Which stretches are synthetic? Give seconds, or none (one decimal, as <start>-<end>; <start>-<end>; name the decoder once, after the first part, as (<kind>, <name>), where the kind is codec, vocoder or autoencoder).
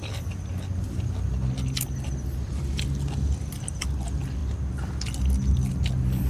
none